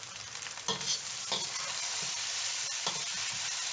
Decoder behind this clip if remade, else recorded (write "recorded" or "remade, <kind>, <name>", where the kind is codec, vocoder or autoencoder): remade, vocoder, BigVGAN v2